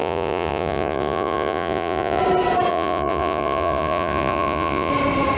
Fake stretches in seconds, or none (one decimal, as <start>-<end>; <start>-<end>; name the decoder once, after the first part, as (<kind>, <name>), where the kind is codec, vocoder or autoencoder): 0.0-2.2 (vocoder, Vocos); 2.7-4.9